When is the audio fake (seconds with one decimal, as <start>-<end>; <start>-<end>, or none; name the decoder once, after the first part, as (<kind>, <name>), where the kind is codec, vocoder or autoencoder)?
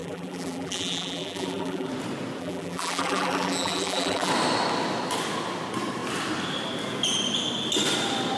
0.0-1.9 (vocoder, BigVGAN v2); 2.4-4.3